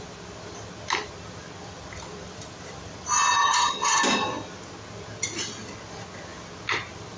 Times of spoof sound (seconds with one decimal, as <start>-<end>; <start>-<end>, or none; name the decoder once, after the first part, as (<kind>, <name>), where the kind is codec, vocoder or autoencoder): 3.4-4.0 (vocoder, HiFi-GAN)